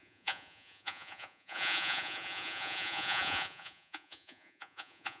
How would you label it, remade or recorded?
remade